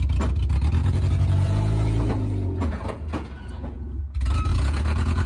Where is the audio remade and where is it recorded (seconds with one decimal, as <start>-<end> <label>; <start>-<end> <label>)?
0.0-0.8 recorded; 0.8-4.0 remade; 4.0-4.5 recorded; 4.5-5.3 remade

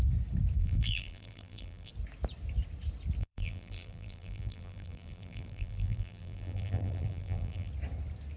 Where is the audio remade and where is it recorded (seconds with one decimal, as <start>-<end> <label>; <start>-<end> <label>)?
0.0-0.6 recorded; 0.6-1.9 remade; 1.9-3.2 recorded; 3.2-7.7 remade; 7.7-8.4 recorded

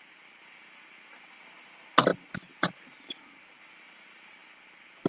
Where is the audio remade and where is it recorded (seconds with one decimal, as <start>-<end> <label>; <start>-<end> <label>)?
0.0-5.1 recorded

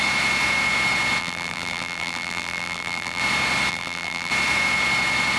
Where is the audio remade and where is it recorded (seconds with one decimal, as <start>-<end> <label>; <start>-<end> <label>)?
0.0-1.2 recorded; 1.2-3.2 remade; 3.2-3.7 recorded; 3.7-4.3 remade; 4.3-5.4 recorded

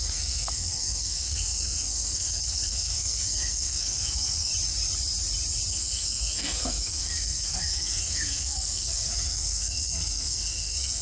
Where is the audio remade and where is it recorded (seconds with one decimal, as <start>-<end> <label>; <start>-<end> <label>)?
0.0-4.5 remade; 4.5-5.7 recorded; 5.7-11.0 remade